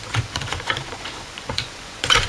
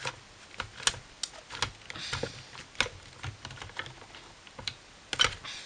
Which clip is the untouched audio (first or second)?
second